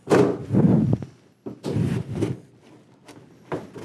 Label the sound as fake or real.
real